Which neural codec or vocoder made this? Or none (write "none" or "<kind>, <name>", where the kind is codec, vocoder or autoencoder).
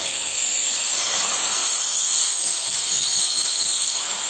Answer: codec, SNAC